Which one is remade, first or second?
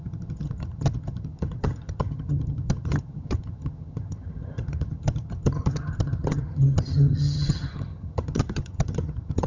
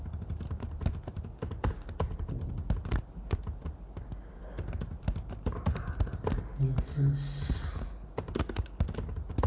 first